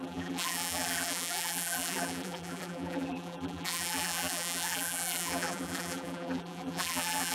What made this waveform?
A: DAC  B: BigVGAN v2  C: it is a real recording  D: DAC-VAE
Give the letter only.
B